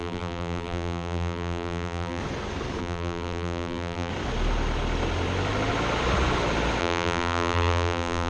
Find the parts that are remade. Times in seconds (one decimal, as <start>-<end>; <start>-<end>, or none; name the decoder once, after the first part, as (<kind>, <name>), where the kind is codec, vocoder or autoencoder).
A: 0.0-2.2 (vocoder, BigVGAN v2); 2.8-4.1; 6.8-8.3